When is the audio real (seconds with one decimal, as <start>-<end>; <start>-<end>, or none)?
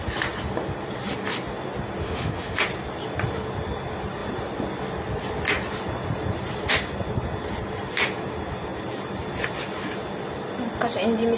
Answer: 0.0-2.0; 2.6-11.4